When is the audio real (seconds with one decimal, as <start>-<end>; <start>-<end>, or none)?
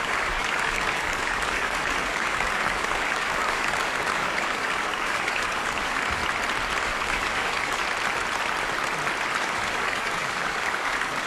6.2-6.8; 7.8-9.4